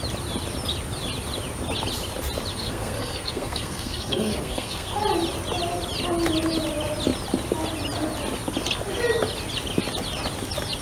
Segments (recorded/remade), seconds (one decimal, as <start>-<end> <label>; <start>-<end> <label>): 0.0-2.5 recorded; 2.5-5.0 remade; 5.0-10.8 recorded